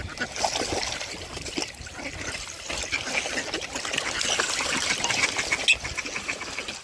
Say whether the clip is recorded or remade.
recorded